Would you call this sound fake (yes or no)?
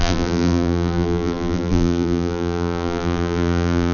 yes